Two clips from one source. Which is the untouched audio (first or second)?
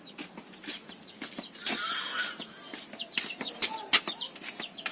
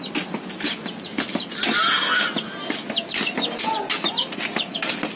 second